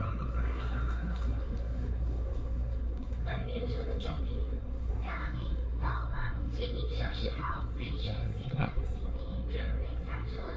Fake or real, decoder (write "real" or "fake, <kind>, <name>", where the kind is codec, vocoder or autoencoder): fake, codec, SNAC